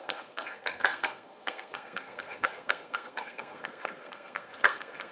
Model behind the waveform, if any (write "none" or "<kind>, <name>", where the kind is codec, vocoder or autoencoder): codec, SNAC